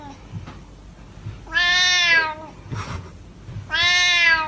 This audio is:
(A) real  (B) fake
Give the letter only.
A